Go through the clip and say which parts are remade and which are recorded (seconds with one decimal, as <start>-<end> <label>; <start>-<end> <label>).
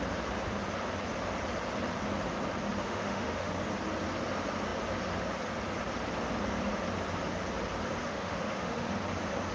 0.0-2.8 recorded; 2.8-3.5 remade; 3.5-8.0 recorded; 8.0-8.9 remade; 8.9-9.5 recorded